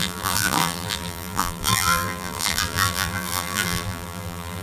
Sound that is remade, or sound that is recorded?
remade